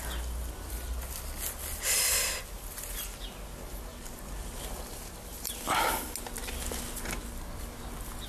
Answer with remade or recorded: recorded